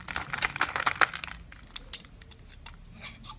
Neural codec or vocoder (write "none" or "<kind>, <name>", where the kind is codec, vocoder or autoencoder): none